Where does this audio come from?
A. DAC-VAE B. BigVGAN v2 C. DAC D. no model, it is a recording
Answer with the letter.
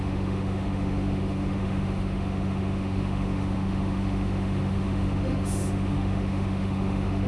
A